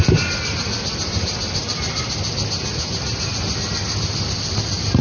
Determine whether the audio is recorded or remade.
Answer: recorded